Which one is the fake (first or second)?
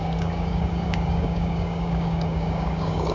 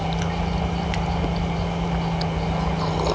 first